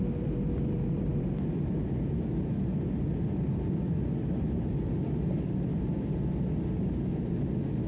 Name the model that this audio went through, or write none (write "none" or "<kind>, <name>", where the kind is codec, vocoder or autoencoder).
none